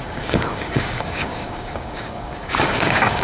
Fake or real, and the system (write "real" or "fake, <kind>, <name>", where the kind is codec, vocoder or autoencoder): fake, codec, DAC